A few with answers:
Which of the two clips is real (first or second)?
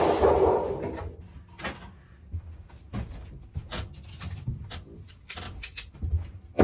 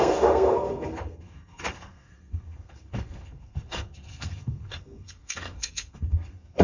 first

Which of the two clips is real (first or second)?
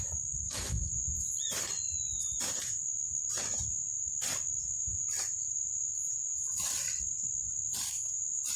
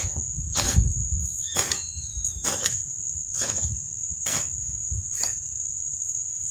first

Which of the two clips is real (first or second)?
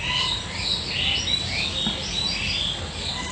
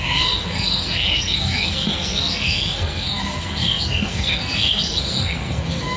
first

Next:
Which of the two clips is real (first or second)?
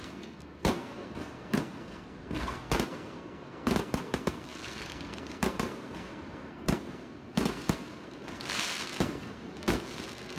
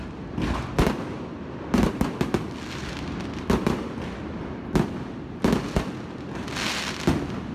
second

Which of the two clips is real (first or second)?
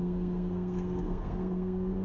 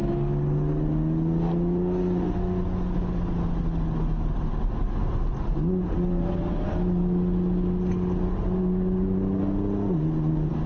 second